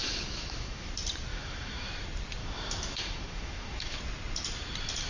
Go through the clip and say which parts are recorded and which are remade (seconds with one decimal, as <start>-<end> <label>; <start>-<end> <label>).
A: 0.0-0.9 remade; 0.9-1.3 recorded; 1.3-1.9 remade; 1.9-2.4 recorded; 2.4-4.0 remade; 4.0-5.1 recorded